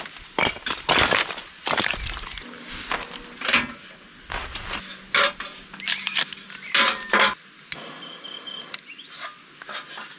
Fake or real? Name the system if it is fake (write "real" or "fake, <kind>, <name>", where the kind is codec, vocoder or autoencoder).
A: real